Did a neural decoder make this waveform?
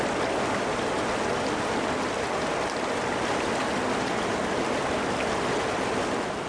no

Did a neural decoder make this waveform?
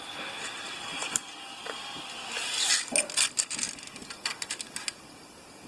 no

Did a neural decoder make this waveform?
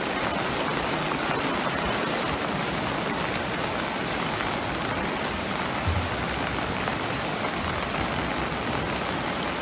no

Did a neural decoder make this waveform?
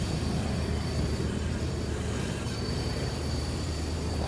yes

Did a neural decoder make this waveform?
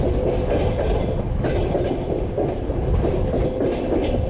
no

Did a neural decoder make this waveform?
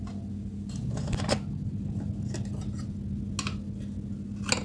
no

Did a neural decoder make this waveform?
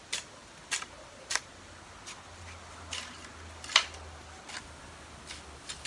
no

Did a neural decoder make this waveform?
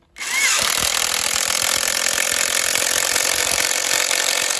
no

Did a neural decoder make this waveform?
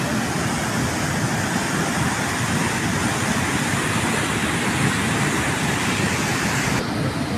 no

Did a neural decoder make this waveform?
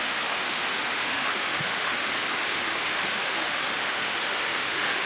yes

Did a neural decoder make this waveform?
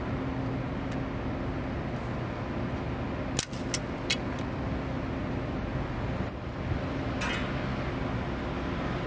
no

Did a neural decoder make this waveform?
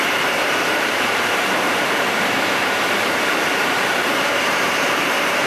yes